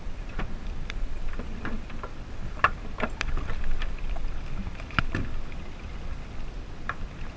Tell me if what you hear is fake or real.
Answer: real